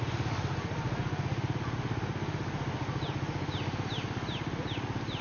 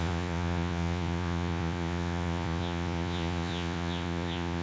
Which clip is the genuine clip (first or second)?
first